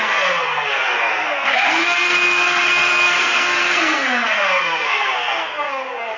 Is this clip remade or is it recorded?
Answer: remade